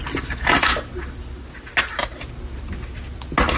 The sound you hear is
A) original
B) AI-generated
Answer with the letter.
A